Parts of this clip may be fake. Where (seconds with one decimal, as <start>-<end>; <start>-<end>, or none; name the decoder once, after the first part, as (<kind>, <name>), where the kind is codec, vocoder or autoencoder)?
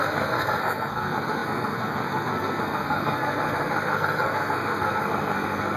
0.0-5.8 (codec, SNAC)